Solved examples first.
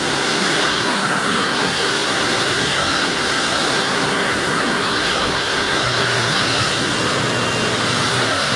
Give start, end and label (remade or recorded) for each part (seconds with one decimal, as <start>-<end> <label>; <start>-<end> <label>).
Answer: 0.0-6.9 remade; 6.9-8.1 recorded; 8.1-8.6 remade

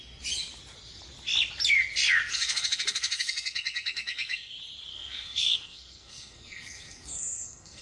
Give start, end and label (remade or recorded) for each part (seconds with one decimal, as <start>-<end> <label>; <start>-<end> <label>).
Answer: 0.0-2.3 recorded; 2.3-4.5 remade; 4.5-4.9 recorded; 4.9-7.8 remade

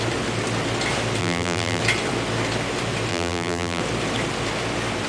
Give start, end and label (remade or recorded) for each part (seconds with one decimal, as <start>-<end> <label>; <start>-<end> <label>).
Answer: 0.0-1.2 recorded; 1.2-1.8 remade; 1.8-3.1 recorded; 3.1-3.8 remade; 3.8-5.1 recorded